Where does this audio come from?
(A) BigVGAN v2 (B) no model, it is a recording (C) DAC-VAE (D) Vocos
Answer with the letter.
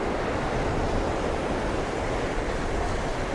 A